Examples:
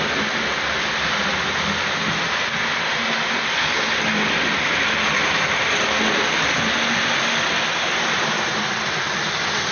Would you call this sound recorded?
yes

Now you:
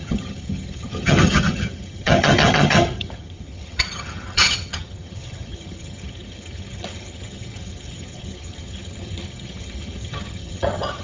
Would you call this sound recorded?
no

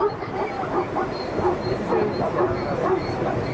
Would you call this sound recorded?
yes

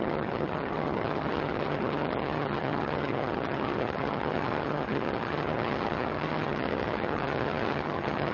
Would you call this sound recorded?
no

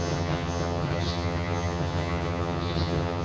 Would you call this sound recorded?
no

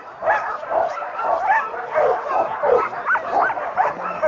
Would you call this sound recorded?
yes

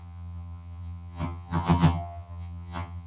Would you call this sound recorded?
no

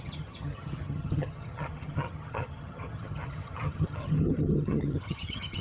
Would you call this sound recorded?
no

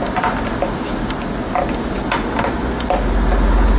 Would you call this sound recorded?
yes